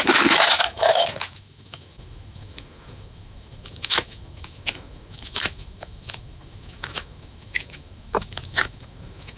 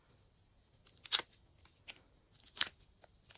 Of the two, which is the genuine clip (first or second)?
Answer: second